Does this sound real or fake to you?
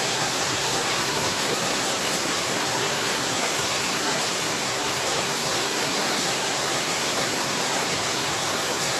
fake